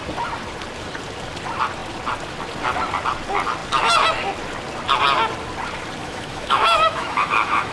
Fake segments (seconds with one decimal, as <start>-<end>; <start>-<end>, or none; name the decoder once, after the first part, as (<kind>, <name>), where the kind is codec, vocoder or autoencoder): 6.0-7.7 (autoencoder, DAC-VAE)